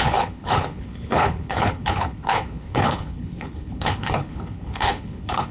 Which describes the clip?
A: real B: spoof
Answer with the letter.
B